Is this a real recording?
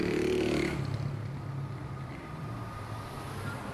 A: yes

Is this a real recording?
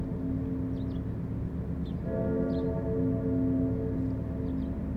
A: yes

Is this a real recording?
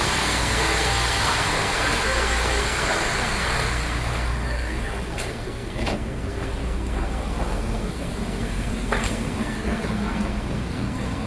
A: no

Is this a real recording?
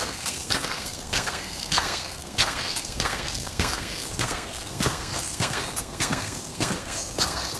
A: no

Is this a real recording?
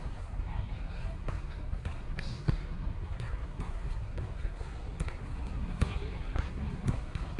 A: no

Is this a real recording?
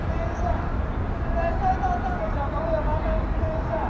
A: yes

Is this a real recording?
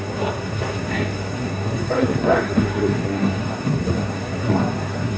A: no